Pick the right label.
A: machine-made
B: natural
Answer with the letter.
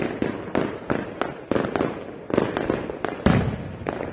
B